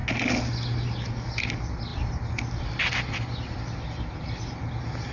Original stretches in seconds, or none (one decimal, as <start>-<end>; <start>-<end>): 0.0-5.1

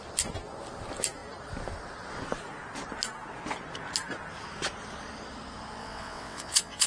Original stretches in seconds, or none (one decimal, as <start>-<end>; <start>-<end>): 0.0-5.8

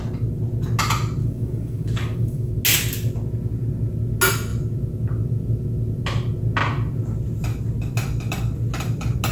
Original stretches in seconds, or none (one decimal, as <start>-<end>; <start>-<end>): 0.0-1.2; 2.5-9.3

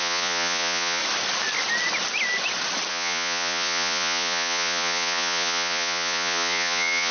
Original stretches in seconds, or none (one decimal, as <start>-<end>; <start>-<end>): 1.0-2.9

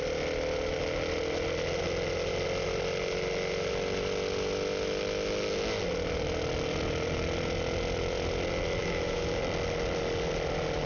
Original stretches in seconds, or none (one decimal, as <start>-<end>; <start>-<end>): 0.0-8.8; 9.4-10.9